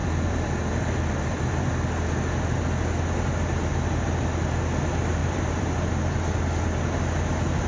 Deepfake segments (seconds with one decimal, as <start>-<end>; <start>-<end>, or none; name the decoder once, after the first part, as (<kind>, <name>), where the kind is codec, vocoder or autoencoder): 0.0-1.7 (vocoder, BigVGAN v2); 5.2-5.9